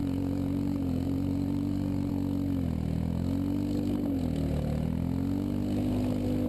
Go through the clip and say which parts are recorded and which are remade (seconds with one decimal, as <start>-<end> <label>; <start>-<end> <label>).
0.0-2.1 remade; 2.1-6.5 recorded